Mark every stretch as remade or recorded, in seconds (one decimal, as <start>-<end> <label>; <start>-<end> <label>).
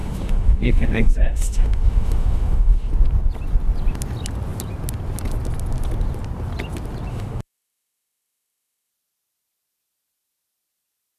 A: 0.0-2.9 remade; 2.9-7.1 recorded; 7.1-8.9 remade; 8.9-11.2 recorded